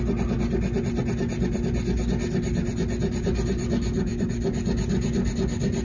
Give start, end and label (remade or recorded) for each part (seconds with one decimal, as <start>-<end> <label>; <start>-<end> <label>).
0.0-5.8 recorded